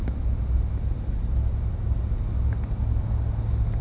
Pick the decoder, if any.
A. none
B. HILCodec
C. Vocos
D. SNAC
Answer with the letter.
A